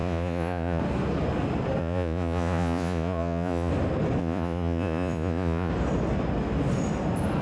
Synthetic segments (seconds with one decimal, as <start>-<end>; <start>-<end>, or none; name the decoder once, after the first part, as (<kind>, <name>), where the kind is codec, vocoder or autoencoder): 0.0-0.8 (vocoder, Vocos); 1.8-3.7; 4.2-5.7